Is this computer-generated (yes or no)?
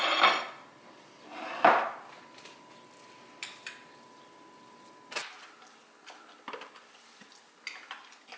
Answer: no